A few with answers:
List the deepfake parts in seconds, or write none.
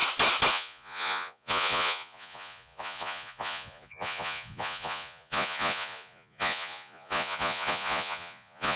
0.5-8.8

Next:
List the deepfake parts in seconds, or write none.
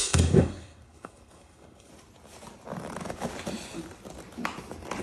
0.0-1.9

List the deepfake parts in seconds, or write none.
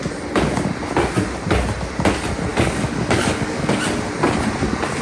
2.5-3.8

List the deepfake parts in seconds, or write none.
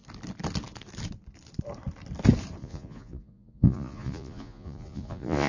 2.6-5.5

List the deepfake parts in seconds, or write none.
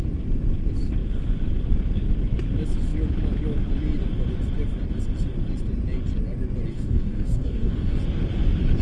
6.7-8.0